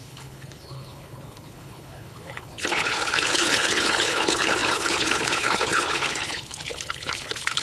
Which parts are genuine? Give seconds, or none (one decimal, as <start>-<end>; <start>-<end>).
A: none